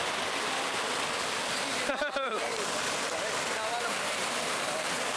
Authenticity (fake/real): real